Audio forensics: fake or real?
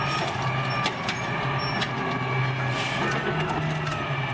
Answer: real